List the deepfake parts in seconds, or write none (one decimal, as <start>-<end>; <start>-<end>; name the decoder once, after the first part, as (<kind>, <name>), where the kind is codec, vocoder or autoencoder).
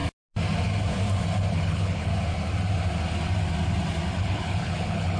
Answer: 1.5-2.1 (codec, HILCodec); 4.2-5.2